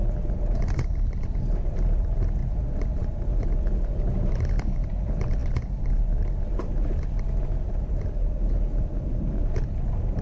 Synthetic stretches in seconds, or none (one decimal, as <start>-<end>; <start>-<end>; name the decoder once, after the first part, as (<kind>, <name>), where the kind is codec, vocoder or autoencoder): 0.0-10.2 (vocoder, BigVGAN v2)